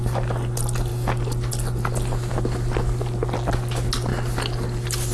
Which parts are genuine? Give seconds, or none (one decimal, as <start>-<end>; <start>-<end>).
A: 0.0-5.1